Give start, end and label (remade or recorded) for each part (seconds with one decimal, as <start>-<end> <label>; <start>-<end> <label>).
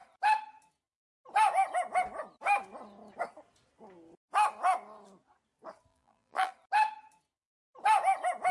0.0-5.9 recorded; 5.9-6.5 remade; 6.5-8.5 recorded